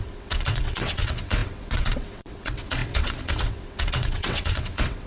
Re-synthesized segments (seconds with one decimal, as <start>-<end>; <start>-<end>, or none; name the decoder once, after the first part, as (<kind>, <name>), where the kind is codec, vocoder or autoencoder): 0.0-5.1 (vocoder, WaveNeXt)